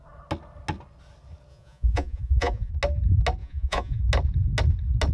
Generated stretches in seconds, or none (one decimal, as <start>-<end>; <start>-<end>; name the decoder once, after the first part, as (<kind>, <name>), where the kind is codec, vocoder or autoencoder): 1.5-2.7 (vocoder, Vocos); 3.4-4.0